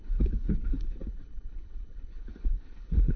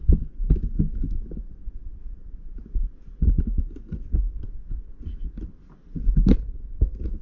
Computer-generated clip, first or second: first